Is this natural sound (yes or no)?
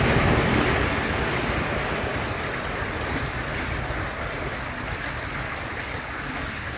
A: yes